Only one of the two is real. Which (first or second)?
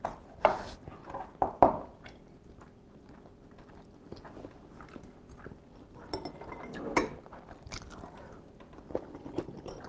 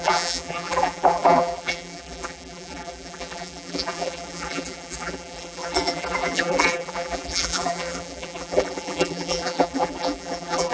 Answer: first